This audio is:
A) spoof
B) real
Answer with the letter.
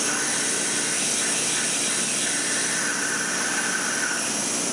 B